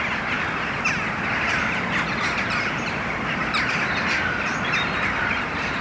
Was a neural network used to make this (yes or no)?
no